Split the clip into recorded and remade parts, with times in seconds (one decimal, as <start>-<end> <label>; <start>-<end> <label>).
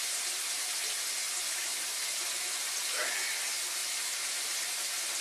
0.0-5.2 recorded